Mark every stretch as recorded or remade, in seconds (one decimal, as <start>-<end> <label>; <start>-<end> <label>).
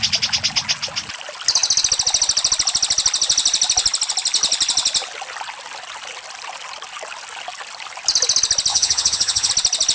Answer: 0.0-8.7 recorded; 8.7-9.5 remade; 9.5-9.9 recorded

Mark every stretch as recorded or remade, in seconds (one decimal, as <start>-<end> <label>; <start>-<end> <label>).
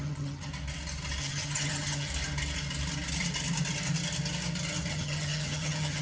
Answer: 0.0-0.5 remade; 0.5-1.2 recorded; 1.2-2.1 remade; 2.1-4.9 recorded; 4.9-6.0 remade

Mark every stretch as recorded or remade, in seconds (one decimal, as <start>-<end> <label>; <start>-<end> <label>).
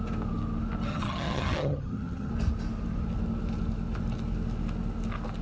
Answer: 0.0-0.9 recorded; 0.9-2.3 remade; 2.3-5.4 recorded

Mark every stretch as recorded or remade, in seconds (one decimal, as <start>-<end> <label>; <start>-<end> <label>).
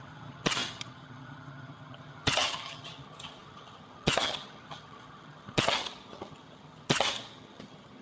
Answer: 0.0-8.0 remade